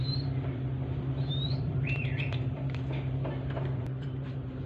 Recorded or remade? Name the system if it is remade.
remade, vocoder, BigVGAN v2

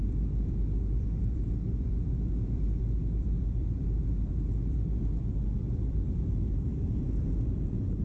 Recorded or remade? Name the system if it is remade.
remade, vocoder, BigVGAN v2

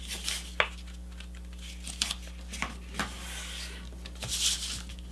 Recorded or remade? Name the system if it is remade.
recorded